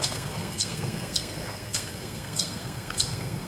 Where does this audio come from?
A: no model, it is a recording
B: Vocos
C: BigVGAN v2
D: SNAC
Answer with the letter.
D